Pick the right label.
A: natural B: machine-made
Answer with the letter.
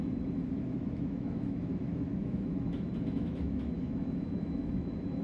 B